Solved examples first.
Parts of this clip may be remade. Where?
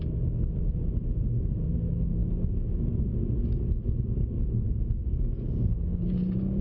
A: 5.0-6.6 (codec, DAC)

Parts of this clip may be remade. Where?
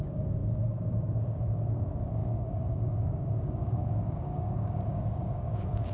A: 0.0-5.9 (codec, DAC)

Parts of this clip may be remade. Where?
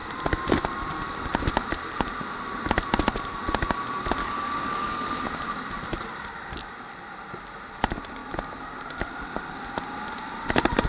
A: 4.2-5.2 (codec, DAC)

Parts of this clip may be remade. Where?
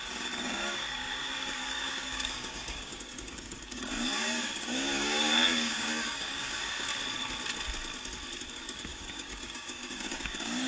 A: 0.0-6.9 (codec, DAC); 8.5-10.7